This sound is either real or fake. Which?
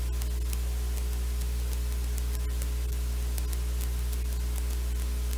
real